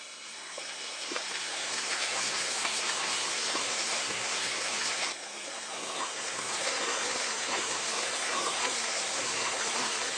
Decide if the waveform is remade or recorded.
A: remade